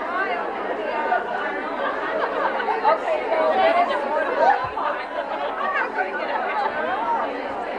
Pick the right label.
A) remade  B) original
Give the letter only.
B